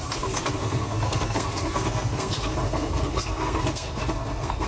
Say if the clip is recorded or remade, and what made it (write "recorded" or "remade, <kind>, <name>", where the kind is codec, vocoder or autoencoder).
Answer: remade, codec, SNAC